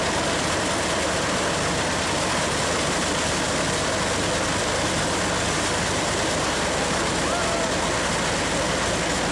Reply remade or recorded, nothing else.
recorded